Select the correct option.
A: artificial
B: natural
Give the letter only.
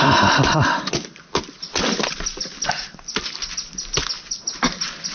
B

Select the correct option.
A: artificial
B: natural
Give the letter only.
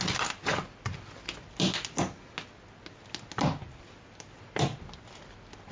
B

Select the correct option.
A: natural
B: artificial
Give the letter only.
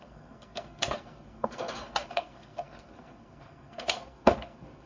B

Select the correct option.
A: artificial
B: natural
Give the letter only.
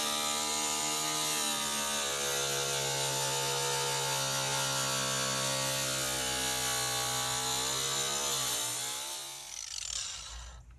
B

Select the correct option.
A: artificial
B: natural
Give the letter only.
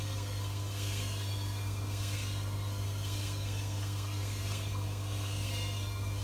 A